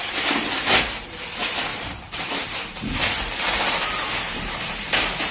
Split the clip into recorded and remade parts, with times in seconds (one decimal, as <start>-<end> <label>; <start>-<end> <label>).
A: 0.0-1.7 recorded; 1.7-5.3 remade